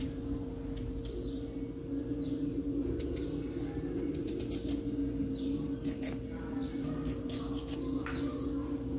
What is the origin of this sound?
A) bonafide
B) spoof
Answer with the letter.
A